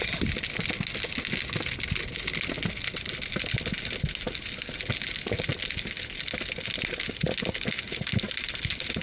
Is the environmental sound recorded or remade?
recorded